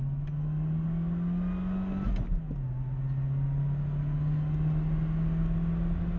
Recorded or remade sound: recorded